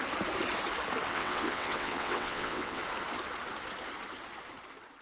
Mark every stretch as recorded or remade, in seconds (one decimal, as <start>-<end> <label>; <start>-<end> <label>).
0.0-1.1 recorded; 1.1-2.8 remade; 2.8-5.0 recorded